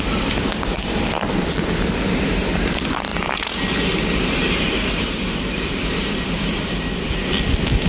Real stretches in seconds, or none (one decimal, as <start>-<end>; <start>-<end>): 3.1-5.4